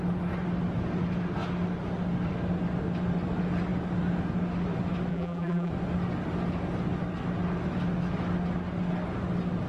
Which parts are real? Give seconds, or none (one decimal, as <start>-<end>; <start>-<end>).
0.0-5.1; 5.7-9.7